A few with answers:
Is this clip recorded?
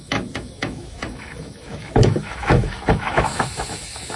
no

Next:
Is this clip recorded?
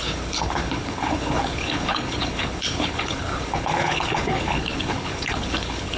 no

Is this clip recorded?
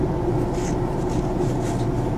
yes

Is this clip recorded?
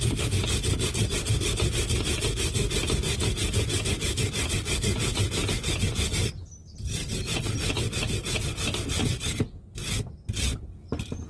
yes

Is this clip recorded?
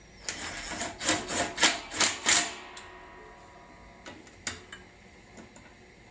yes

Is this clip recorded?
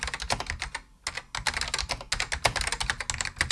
yes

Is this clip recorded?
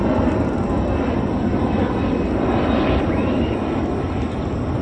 yes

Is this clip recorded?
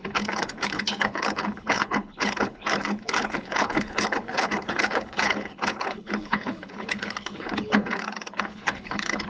no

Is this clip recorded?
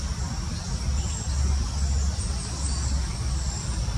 yes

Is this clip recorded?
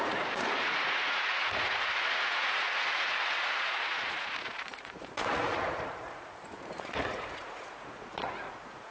no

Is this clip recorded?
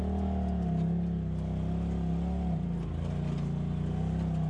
yes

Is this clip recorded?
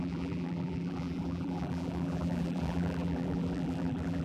no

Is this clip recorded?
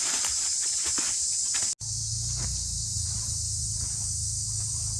yes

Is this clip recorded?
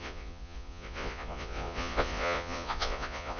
no